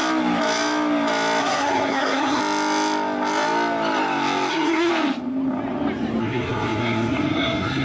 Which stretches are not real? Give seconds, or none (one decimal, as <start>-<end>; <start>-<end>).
1.4-2.4; 4.5-4.9; 6.2-7.8